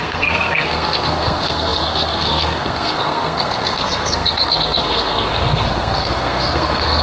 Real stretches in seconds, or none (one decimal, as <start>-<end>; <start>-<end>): none